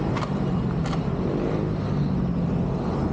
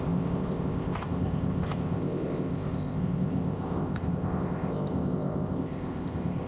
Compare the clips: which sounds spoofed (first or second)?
second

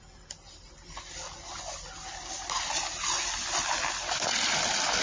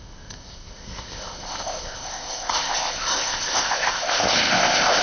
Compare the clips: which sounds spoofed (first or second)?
second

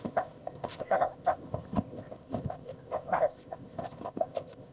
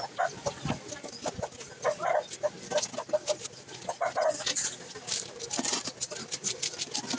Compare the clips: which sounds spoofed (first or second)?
first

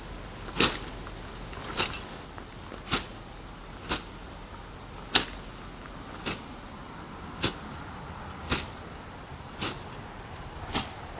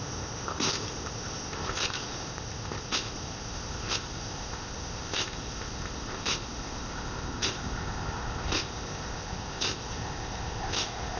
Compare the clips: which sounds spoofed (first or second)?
second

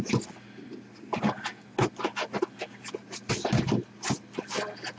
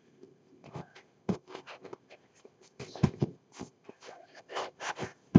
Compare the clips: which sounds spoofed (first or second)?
second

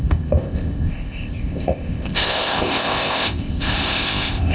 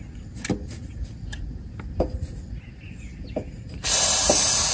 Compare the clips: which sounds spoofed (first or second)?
first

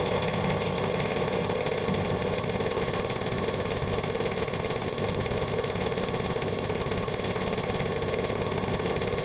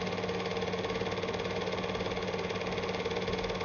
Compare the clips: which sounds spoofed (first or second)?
first